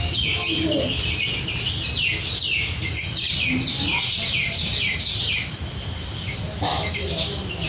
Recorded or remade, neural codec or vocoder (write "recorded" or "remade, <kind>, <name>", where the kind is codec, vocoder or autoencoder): recorded